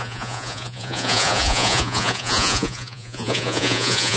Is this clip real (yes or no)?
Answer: no